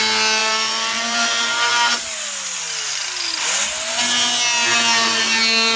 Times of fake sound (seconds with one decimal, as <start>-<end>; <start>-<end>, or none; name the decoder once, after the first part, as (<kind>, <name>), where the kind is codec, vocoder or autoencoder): 0.4-1.7 (vocoder, BigVGAN v2)